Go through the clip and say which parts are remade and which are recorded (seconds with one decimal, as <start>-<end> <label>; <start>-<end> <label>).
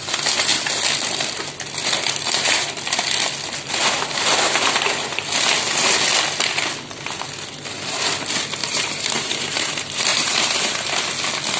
0.0-8.6 recorded; 8.6-9.7 remade; 9.7-10.1 recorded; 10.1-11.0 remade; 11.0-11.6 recorded